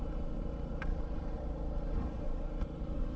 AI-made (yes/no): no